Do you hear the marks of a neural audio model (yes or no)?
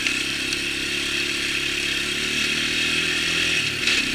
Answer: yes